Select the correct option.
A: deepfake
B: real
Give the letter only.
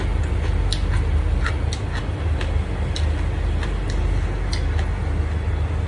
B